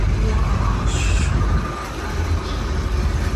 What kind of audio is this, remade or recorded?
recorded